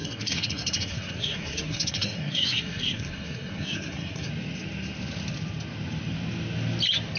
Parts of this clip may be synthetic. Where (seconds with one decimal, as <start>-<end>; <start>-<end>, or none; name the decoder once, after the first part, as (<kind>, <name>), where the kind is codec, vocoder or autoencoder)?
0.0-4.3 (codec, SNAC)